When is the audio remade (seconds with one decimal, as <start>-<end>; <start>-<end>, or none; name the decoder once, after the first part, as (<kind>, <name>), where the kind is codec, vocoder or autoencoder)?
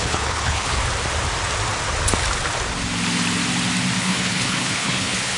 0.0-0.8 (codec, HILCodec); 4.0-5.4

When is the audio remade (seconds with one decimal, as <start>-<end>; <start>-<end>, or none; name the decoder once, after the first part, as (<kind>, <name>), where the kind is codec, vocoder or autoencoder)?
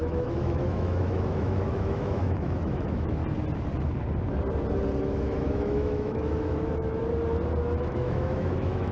0.0-3.2 (autoencoder, DAC-VAE); 5.0-7.0; 7.8-8.9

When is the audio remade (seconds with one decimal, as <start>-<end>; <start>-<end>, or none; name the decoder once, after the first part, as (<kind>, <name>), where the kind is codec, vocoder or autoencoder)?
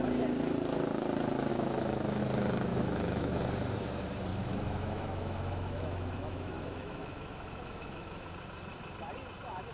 1.5-2.2 (autoencoder, DAC-VAE); 2.7-3.4; 4.3-8.3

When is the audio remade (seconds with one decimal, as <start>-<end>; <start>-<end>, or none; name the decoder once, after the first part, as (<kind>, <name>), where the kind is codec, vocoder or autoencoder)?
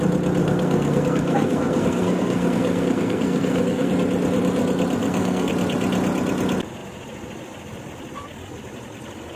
0.4-3.9 (codec, SNAC); 5.0-5.5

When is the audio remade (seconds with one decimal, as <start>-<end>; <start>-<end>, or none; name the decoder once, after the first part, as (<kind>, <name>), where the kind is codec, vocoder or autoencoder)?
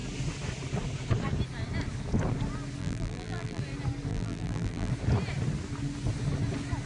2.8-3.6 (vocoder, BigVGAN v2); 4.1-4.9